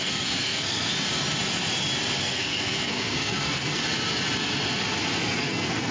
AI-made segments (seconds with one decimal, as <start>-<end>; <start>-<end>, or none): 0.0-0.9; 2.2-3.8; 5.4-5.9